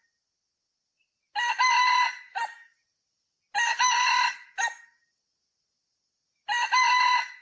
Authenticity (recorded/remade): recorded